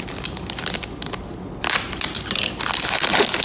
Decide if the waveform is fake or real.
real